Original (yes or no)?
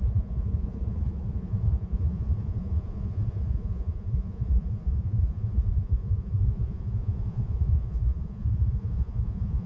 no